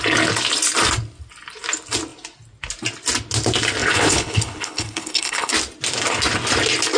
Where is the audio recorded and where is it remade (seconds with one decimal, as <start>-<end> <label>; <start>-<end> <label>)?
0.0-3.8 recorded; 3.8-5.5 remade; 5.5-7.0 recorded